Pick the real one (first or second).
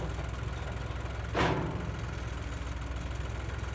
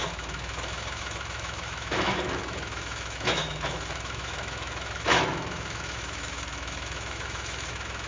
first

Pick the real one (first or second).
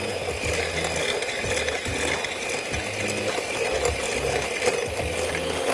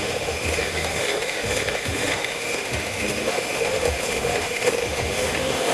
first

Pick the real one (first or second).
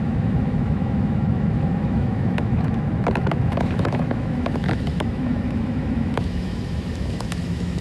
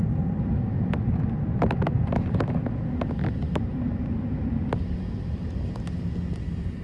second